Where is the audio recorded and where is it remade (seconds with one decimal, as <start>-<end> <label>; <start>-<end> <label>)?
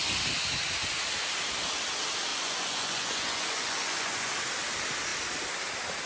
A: 0.0-2.3 recorded; 2.3-4.3 remade; 4.3-6.1 recorded